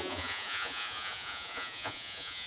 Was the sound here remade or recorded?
remade